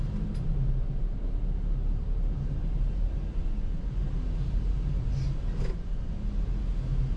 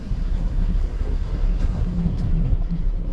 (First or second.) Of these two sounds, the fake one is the second